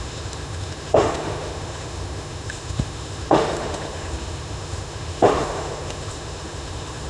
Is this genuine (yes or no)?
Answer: no